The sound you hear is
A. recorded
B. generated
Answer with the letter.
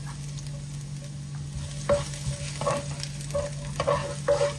A